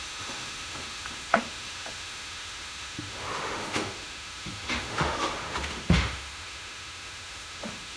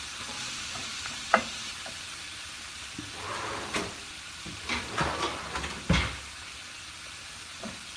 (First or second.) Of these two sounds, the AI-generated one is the first